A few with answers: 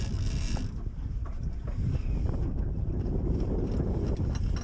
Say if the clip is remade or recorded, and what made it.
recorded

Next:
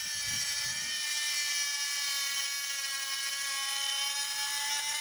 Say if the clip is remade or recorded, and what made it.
recorded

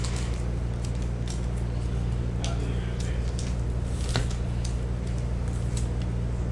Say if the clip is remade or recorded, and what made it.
recorded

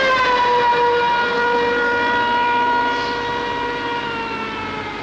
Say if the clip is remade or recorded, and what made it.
recorded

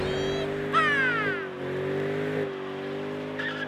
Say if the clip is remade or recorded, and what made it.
recorded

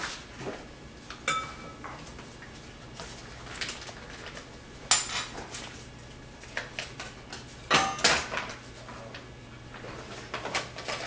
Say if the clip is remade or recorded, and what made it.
recorded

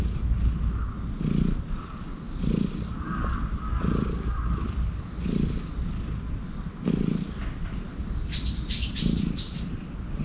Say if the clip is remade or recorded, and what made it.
recorded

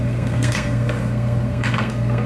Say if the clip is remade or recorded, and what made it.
remade, codec, SNAC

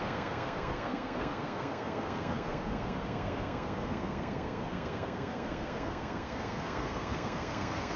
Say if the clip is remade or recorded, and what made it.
remade, codec, SNAC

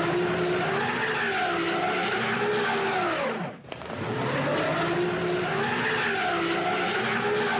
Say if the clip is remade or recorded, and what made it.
recorded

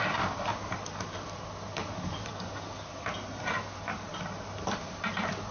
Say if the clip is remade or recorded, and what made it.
recorded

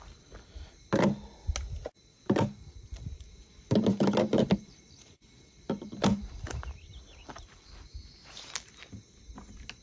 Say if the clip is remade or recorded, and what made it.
recorded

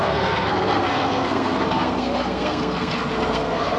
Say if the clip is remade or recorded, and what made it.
remade, codec, SNAC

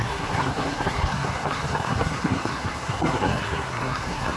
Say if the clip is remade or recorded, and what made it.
remade, codec, SNAC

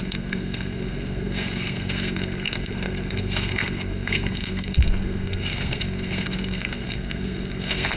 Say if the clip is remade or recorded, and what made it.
remade, codec, SNAC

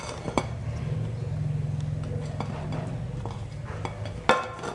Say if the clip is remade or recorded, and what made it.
recorded